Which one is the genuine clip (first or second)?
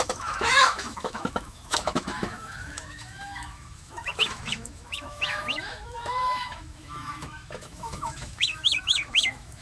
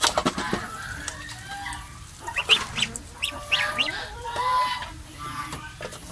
second